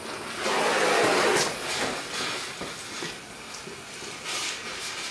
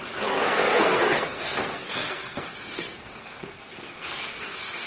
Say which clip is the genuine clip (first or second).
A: first